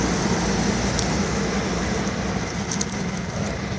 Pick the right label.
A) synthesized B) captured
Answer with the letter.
B